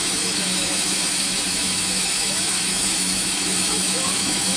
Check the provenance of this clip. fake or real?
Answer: fake